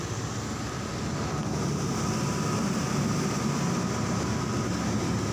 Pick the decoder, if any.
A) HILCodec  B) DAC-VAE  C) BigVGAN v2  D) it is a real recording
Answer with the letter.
D